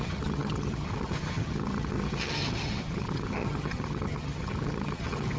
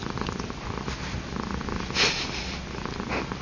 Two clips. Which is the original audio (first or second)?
second